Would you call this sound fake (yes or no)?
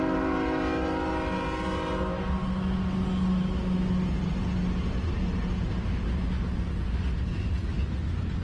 no